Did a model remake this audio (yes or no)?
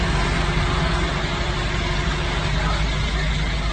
no